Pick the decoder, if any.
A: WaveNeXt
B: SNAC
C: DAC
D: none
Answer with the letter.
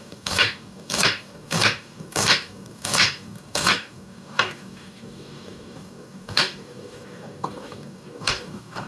C